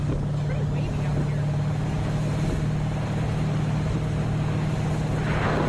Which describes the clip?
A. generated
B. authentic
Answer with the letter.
B